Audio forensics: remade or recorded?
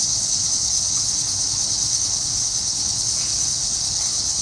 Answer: remade